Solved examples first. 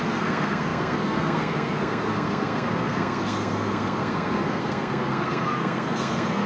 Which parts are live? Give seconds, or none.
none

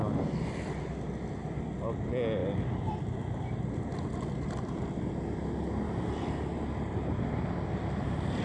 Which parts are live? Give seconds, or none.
0.0-2.4; 5.1-8.4

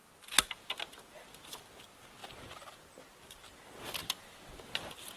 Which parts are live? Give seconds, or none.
0.0-5.2

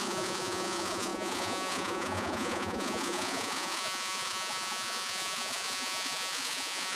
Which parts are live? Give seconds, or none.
none

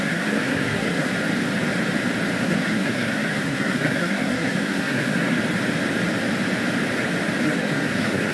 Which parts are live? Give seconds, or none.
1.1-2.4; 5.4-7.4